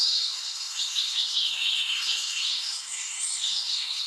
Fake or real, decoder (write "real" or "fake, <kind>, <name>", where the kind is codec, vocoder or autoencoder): fake, codec, SNAC